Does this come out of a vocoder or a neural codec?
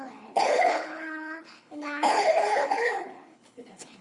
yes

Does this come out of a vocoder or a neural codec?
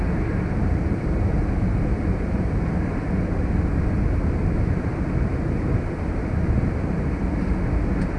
no